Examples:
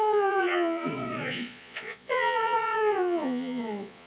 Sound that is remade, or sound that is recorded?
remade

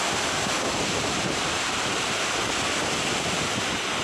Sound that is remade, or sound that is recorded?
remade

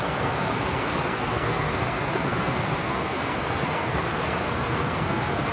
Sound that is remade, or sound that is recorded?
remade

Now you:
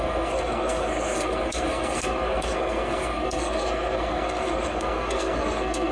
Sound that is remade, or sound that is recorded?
remade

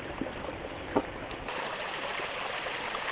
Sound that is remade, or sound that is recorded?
recorded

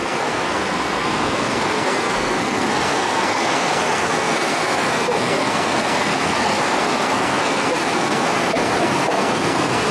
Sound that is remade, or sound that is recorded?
remade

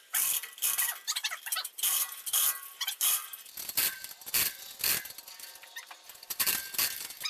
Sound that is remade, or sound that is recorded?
recorded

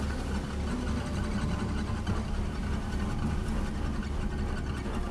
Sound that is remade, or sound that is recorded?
recorded